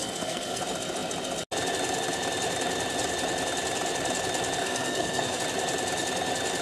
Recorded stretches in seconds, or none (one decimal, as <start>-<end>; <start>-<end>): 0.6-4.6; 5.4-6.6